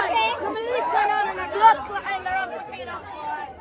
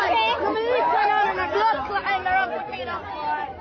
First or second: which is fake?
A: first